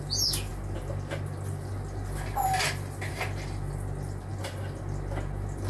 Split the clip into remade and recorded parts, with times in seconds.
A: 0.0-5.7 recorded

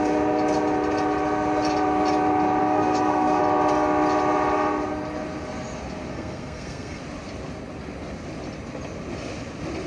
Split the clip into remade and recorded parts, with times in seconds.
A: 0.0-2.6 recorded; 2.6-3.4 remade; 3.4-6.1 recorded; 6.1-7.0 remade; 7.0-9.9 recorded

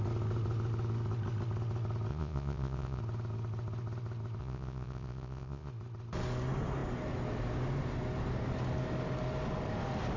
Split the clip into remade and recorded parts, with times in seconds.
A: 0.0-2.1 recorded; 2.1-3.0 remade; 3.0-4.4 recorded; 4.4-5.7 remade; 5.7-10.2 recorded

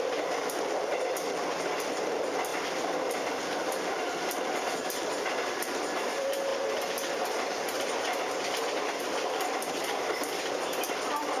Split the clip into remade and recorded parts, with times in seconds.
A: 0.0-6.5 remade; 6.5-9.0 recorded; 9.0-11.4 remade

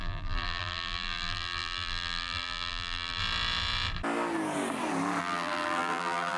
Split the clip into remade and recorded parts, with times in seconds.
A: 0.0-3.2 remade; 3.2-5.2 recorded; 5.2-6.4 remade